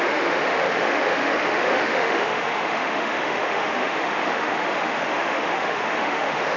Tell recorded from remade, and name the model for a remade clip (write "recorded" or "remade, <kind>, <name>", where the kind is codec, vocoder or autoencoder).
remade, autoencoder, DAC-VAE